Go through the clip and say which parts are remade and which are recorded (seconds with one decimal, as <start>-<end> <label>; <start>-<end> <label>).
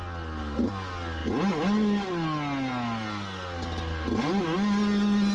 0.0-5.3 recorded